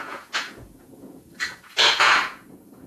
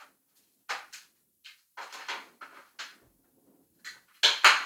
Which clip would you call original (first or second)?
second